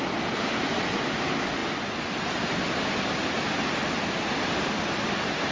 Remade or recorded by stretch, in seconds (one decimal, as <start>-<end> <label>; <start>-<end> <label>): 0.0-5.5 recorded